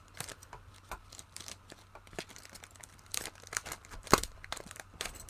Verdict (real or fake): fake